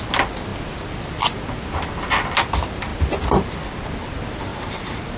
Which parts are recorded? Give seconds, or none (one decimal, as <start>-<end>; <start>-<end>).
0.0-4.5